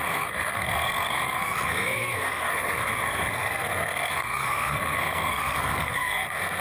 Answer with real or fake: fake